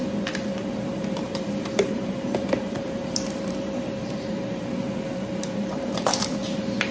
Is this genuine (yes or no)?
no